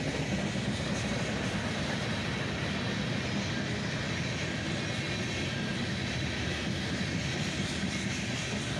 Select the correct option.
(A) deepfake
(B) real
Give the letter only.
B